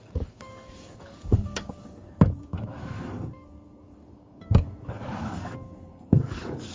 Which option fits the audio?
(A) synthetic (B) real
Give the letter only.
A